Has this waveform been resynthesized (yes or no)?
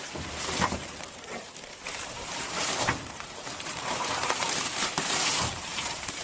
yes